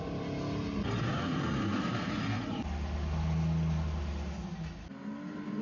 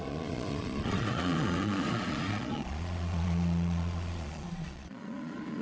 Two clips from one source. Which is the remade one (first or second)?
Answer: second